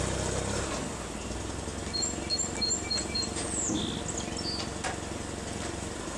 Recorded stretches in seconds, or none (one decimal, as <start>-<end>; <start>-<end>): 0.0-3.0; 3.8-6.2